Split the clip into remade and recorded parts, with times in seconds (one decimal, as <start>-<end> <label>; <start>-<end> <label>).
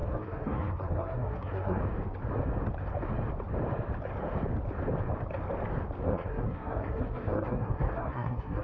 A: 0.0-1.8 remade; 1.8-6.0 recorded; 6.0-8.6 remade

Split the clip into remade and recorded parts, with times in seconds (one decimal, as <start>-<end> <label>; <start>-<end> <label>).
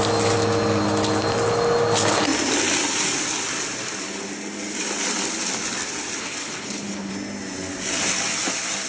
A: 0.0-6.2 recorded; 6.2-7.1 remade; 7.1-8.9 recorded